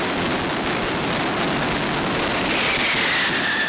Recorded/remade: recorded